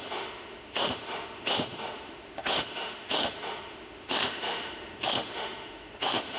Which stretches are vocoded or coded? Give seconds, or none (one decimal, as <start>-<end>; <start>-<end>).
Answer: 0.0-6.4